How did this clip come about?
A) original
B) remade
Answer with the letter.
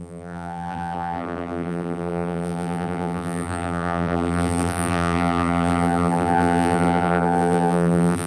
B